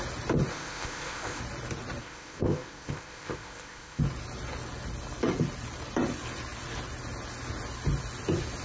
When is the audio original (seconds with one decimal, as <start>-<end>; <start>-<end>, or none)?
0.0-0.5; 1.4-2.0; 4.0-8.6